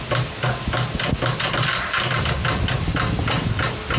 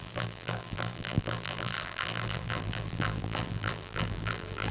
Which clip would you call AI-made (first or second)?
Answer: second